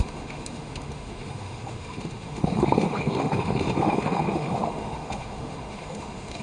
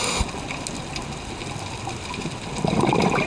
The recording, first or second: second